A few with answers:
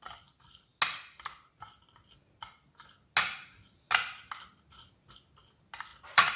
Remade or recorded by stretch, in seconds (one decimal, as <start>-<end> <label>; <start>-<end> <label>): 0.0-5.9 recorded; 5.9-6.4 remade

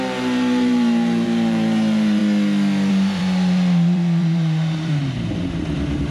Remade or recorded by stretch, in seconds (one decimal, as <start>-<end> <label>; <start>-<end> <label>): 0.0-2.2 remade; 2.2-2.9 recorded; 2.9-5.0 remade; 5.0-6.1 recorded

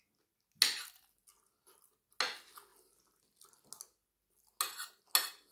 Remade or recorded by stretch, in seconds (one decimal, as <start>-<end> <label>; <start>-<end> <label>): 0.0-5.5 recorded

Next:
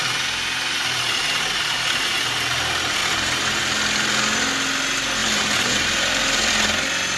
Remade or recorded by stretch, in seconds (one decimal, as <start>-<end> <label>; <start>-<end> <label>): 0.0-5.2 recorded; 5.2-6.5 remade; 6.5-7.2 recorded

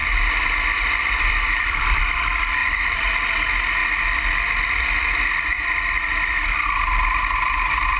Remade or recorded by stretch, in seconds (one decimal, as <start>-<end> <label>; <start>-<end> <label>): 0.0-2.0 remade; 2.0-2.6 recorded; 2.6-3.1 remade; 3.1-8.0 recorded

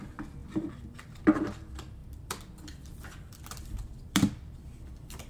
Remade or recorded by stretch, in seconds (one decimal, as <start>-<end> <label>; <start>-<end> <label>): 0.0-0.4 recorded; 0.4-1.4 remade; 1.4-2.0 recorded; 2.0-5.3 remade